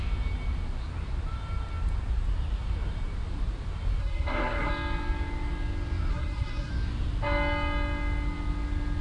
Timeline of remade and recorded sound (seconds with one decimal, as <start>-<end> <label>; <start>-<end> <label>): 0.0-4.0 recorded; 4.0-4.7 remade; 4.7-6.1 recorded; 6.1-6.7 remade; 6.7-9.0 recorded